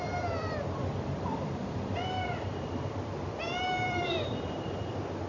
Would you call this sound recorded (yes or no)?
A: no